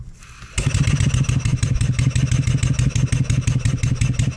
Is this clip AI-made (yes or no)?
no